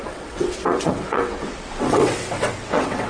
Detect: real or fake fake